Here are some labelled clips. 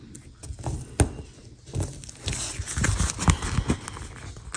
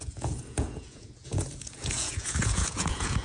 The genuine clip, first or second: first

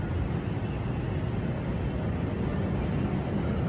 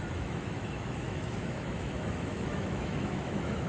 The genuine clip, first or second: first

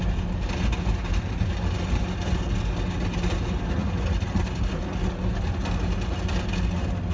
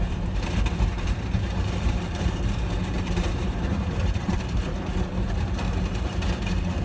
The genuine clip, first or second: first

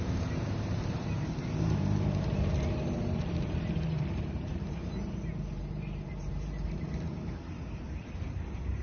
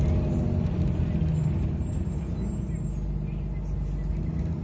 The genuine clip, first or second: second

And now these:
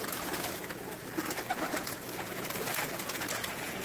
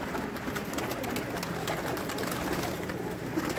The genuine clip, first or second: second